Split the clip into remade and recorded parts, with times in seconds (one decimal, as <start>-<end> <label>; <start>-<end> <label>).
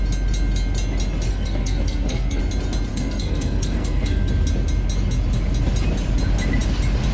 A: 0.0-1.3 recorded; 1.3-2.4 remade; 2.4-2.9 recorded; 2.9-4.3 remade; 4.3-7.1 recorded